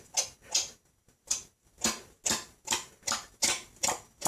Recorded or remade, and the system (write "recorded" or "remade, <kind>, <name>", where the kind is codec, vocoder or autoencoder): recorded